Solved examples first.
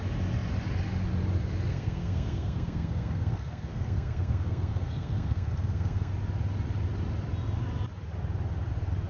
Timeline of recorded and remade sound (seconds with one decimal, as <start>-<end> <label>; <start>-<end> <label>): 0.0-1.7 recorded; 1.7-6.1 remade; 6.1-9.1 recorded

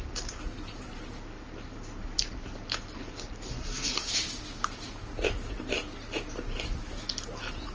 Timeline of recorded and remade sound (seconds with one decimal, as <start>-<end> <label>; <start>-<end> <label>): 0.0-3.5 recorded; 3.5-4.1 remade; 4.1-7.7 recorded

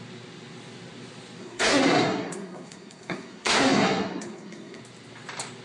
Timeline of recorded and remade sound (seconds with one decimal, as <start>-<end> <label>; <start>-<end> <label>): 0.0-1.4 recorded; 1.4-4.8 remade; 4.8-5.6 recorded

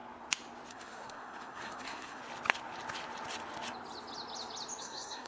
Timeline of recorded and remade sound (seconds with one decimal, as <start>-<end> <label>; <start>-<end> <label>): 0.0-0.7 recorded; 0.7-2.2 remade; 2.2-4.8 recorded; 4.8-5.3 remade

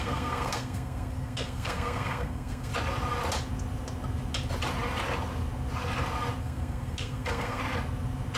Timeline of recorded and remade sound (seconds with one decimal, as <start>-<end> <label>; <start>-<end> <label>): 0.0-2.7 remade; 2.7-6.4 recorded; 6.4-7.6 remade; 7.6-8.4 recorded

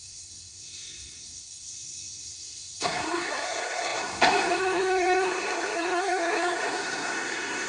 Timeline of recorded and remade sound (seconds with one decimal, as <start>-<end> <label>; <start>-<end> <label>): 0.0-7.7 remade